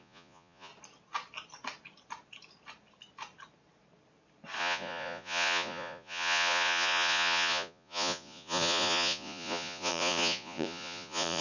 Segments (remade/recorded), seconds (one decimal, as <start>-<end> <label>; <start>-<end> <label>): 0.0-0.7 remade; 0.7-4.6 recorded; 4.6-11.4 remade